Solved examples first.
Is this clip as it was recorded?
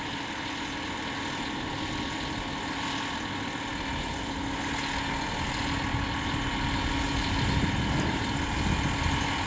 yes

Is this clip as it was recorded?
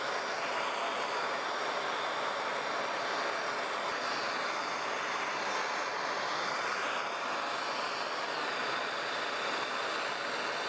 yes